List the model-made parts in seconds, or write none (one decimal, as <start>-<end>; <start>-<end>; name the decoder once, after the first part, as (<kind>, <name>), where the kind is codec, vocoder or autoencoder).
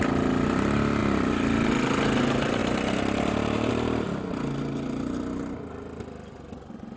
2.6-3.7 (vocoder, BigVGAN v2)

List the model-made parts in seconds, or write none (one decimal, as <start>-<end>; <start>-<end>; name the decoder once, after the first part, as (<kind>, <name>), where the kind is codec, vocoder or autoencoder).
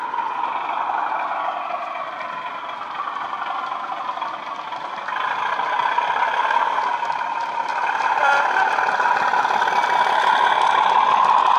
7.7-8.8 (vocoder, BigVGAN v2)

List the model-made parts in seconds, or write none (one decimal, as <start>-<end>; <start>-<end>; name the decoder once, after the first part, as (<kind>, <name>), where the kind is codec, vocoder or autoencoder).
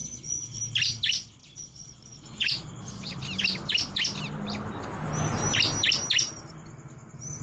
0.0-0.6 (vocoder, Vocos); 1.4-3.2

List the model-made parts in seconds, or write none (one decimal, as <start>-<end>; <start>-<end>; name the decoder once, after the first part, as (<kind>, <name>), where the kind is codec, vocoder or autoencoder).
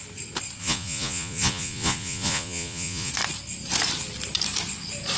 0.6-3.1 (vocoder, Vocos)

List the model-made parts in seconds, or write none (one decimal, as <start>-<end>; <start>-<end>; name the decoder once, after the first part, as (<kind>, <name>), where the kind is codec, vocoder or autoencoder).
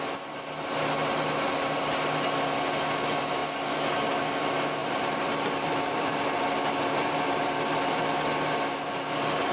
4.8-8.0 (vocoder, BigVGAN v2)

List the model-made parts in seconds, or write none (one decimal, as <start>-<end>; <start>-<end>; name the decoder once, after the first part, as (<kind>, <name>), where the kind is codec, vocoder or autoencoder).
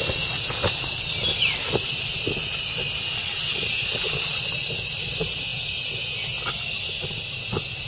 3.2-3.8 (vocoder, WaveNeXt)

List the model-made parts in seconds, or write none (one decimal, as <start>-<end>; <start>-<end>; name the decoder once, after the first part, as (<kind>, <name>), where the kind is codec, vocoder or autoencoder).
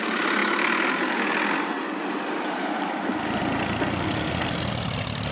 none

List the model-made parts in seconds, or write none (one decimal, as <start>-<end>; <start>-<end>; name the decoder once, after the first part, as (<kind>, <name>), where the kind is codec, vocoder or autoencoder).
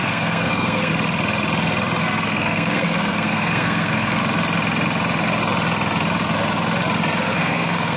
0.0-0.9 (codec, SNAC); 2.0-4.2; 7.3-8.0